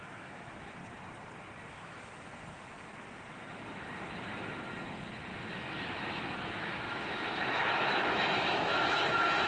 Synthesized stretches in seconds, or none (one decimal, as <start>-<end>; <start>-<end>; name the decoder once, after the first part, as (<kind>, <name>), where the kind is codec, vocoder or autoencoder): 0.0-0.8 (autoencoder, DAC-VAE); 1.7-2.1; 5.9-9.5